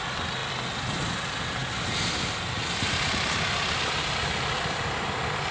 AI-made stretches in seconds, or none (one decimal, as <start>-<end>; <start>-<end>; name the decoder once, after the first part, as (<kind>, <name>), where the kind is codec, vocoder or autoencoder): none

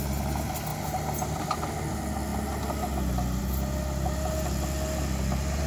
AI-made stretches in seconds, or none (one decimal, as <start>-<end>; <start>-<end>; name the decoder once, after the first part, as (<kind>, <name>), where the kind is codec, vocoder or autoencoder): none

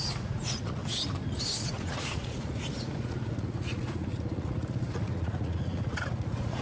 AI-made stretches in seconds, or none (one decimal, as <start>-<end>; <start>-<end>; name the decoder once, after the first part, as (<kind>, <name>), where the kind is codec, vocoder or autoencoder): 0.0-0.8 (vocoder, Vocos); 1.7-6.6

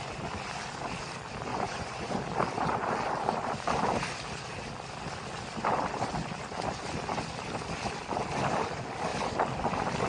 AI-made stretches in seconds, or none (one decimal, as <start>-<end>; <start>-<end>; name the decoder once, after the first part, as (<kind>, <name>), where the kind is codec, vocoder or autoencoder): 1.5-2.2 (vocoder, Vocos)

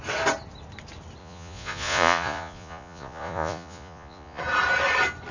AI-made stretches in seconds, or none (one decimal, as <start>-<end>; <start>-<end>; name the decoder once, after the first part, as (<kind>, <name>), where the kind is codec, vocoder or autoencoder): 1.2-4.4 (vocoder, Vocos)

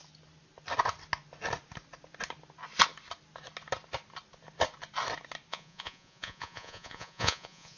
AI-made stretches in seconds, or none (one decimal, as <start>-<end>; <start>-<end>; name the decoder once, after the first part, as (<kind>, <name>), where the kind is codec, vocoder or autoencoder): 5.5-7.8 (vocoder, Vocos)

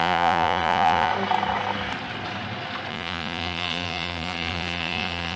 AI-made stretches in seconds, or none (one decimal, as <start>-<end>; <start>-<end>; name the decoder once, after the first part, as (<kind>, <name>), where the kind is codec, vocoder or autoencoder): 0.0-1.1 (vocoder, Vocos); 2.9-5.4

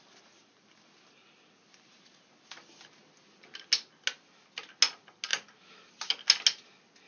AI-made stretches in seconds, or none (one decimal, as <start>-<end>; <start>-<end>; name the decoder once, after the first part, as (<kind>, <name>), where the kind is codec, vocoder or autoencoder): none